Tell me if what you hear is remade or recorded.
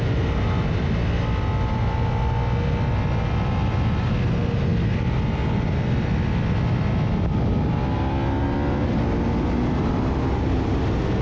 recorded